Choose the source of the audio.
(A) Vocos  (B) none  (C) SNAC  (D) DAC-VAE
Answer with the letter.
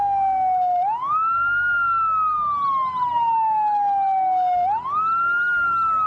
B